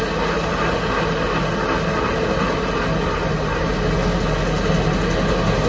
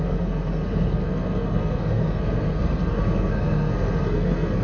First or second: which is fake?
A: second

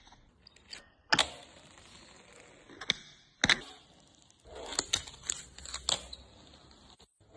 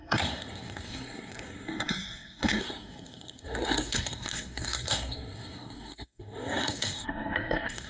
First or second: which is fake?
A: second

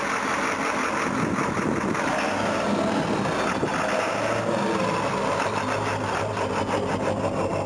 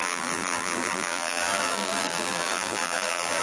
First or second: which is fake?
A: second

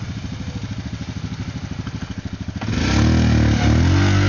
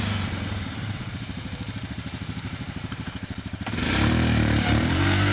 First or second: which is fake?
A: second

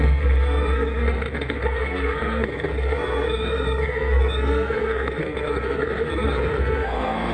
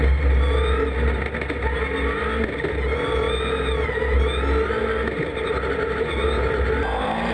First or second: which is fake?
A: first